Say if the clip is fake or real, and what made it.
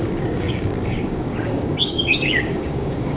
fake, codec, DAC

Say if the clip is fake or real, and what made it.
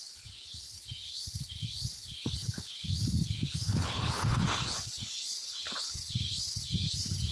fake, codec, HILCodec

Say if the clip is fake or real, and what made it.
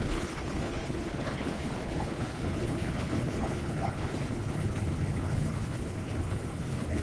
fake, codec, HILCodec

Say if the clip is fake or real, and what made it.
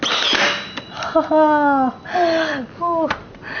real